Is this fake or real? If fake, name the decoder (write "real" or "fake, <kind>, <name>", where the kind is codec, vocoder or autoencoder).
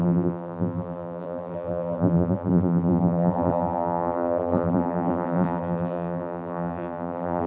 fake, vocoder, BigVGAN v2